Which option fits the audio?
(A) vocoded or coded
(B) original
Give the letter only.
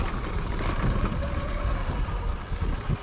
B